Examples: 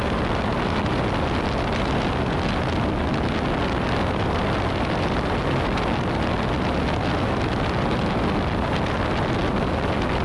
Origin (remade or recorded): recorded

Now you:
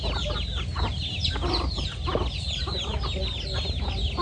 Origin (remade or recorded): recorded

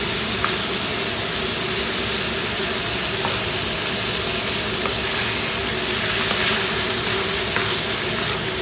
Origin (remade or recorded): recorded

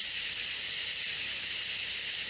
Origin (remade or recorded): recorded